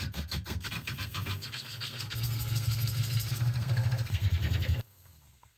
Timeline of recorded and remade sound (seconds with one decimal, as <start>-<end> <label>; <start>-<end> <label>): 0.0-5.6 remade